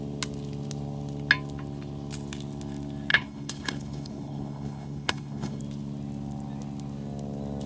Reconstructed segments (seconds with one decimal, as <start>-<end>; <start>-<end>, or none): 3.1-5.6